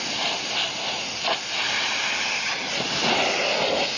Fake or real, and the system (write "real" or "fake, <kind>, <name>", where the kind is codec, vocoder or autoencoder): real